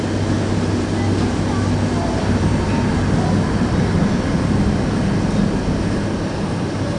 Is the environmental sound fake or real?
real